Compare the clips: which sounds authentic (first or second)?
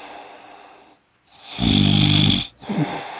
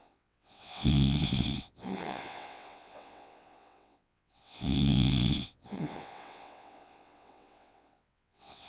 first